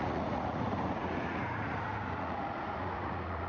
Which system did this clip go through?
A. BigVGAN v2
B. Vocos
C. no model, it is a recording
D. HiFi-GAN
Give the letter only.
B